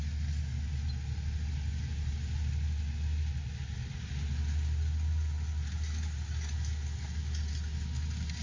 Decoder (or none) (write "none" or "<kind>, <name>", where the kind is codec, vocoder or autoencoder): none